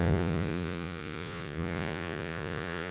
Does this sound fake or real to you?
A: fake